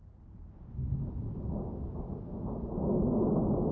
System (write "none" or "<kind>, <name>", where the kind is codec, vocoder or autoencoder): none